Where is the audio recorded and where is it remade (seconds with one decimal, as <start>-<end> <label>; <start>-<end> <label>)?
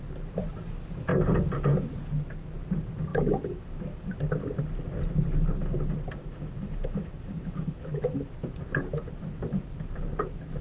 0.0-3.1 recorded; 3.1-3.8 remade; 3.8-6.2 recorded; 6.2-8.3 remade; 8.3-10.6 recorded